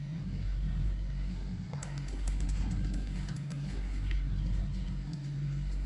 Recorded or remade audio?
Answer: remade